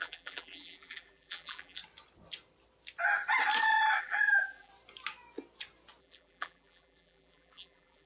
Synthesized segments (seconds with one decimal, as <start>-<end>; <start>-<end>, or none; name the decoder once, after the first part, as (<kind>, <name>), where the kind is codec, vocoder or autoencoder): 0.0-1.8 (vocoder, BigVGAN v2); 4.0-4.7; 6.0-8.1